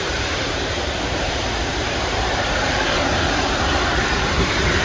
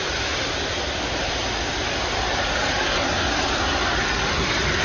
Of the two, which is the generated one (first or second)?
first